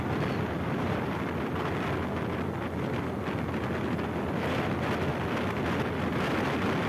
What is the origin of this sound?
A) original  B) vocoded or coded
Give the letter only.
A